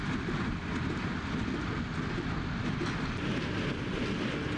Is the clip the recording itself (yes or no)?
yes